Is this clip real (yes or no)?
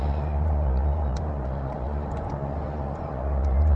no